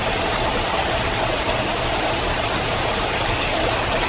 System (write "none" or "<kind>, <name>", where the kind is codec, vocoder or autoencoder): vocoder, BigVGAN v2